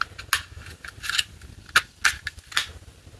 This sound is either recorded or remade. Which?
recorded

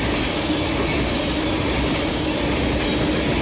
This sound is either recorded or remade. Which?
recorded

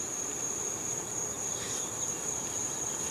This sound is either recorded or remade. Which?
remade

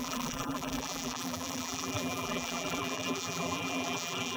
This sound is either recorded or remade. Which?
remade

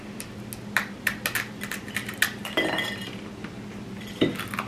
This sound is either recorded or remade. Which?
recorded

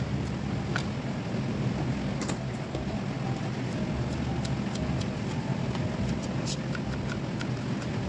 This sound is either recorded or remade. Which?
recorded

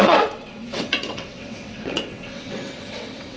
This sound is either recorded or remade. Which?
remade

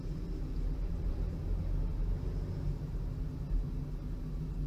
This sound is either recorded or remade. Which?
recorded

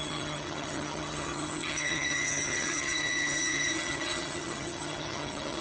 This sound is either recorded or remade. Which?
remade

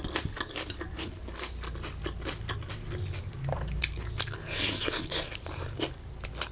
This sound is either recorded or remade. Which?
recorded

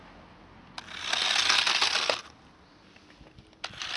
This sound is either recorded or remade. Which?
recorded